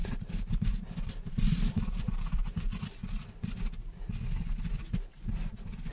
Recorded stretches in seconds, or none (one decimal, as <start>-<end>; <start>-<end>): 0.0-1.0; 3.0-5.1